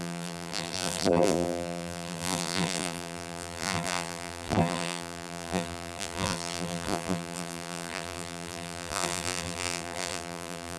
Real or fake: fake